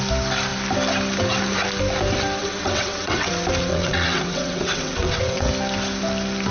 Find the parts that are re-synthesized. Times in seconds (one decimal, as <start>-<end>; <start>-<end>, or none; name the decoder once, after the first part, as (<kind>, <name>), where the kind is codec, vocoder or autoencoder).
2.4-3.3 (vocoder, WaveNeXt); 3.7-5.5